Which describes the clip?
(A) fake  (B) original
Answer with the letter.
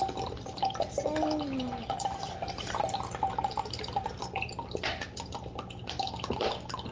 B